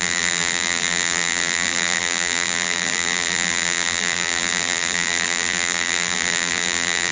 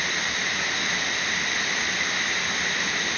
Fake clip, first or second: first